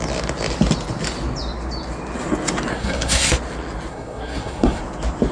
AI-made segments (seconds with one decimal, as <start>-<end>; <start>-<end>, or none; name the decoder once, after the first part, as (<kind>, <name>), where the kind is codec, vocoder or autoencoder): 2.7-3.3 (codec, SNAC); 3.9-4.8